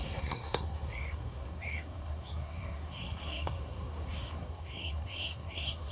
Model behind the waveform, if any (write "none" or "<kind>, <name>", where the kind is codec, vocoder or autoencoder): codec, SNAC